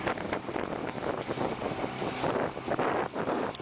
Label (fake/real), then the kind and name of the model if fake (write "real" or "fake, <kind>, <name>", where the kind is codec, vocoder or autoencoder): real